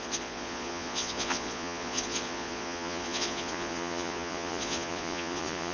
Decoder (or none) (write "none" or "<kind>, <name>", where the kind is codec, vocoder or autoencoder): vocoder, Vocos